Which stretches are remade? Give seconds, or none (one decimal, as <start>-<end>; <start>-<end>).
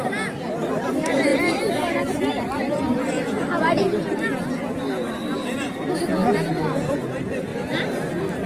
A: 1.3-4.4; 7.5-8.1